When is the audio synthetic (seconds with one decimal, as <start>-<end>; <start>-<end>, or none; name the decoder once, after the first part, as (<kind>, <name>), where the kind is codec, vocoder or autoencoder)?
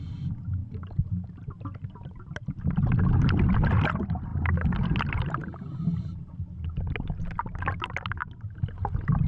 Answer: none